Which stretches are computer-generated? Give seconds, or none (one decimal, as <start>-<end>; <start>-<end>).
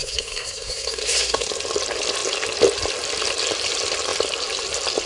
0.0-1.5